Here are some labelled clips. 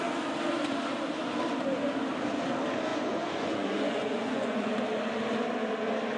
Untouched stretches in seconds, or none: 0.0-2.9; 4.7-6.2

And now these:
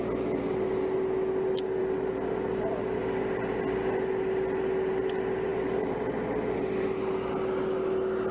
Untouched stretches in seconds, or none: 0.0-8.3

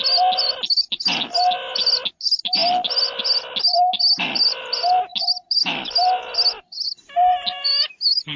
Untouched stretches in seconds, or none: 0.0-8.4

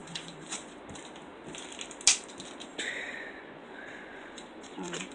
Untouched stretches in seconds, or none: 0.8-2.7

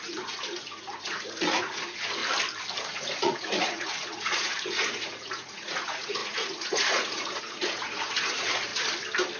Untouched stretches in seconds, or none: 2.2-2.9; 8.7-9.4

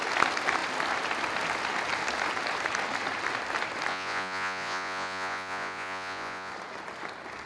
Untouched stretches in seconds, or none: 0.0-3.9; 6.5-7.5

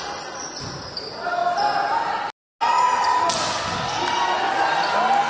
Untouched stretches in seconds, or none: 0.0-5.3